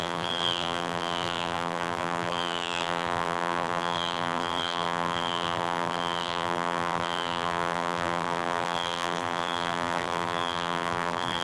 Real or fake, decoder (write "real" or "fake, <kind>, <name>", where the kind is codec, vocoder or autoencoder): fake, vocoder, BigVGAN v2